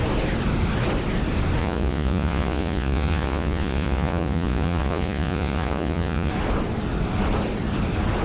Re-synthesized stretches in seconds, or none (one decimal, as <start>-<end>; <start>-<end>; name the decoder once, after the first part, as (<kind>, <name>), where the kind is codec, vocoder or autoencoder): 1.6-6.3 (vocoder, Vocos)